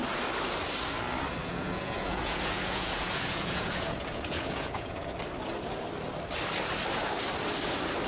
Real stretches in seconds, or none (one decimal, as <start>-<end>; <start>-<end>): 0.0-1.4; 5.2-8.1